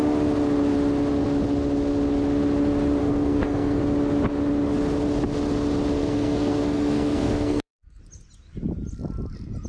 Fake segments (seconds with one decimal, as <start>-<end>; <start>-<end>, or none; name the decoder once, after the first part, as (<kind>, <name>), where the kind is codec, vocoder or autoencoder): 3.0-3.8 (codec, SNAC); 6.0-8.0